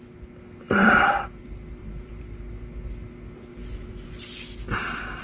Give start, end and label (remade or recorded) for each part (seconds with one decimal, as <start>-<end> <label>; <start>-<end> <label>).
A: 0.0-0.8 recorded; 0.8-1.4 remade; 1.4-1.8 recorded; 1.8-2.5 remade; 2.5-3.5 recorded; 3.5-4.2 remade; 4.2-5.2 recorded